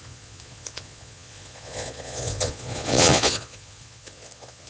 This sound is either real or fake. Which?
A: fake